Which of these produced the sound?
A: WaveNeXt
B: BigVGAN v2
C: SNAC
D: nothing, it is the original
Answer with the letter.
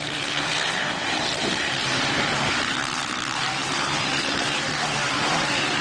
B